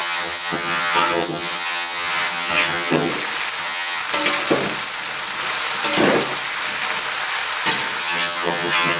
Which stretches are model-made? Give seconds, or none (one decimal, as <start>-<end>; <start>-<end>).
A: 0.0-3.1; 3.6-4.0; 8.0-9.0

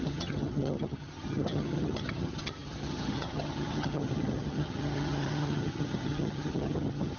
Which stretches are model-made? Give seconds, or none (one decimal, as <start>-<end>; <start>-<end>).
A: 0.0-7.2

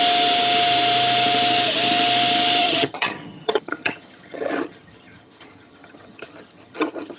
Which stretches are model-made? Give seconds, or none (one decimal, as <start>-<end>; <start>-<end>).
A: 2.6-7.2

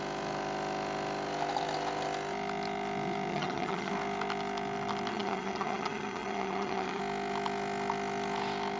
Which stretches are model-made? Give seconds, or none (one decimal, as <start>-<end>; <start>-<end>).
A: 3.3-3.9; 5.1-7.0